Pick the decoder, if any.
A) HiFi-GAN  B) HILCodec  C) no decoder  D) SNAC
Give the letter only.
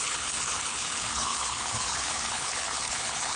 B